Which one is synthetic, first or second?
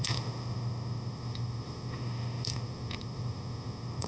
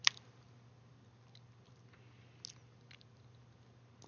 first